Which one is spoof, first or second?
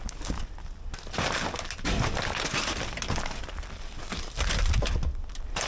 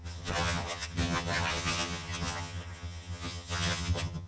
second